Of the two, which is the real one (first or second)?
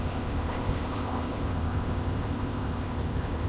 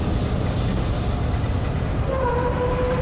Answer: second